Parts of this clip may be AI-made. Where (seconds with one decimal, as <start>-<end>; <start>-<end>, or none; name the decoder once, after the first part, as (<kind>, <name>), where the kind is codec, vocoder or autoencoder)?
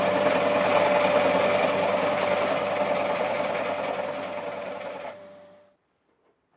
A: 0.0-0.7 (vocoder, BigVGAN v2); 1.6-6.6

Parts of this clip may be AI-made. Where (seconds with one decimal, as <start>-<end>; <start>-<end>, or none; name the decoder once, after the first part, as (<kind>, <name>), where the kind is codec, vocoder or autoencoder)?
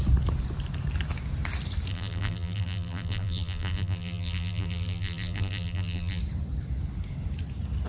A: 1.9-6.2 (vocoder, BigVGAN v2)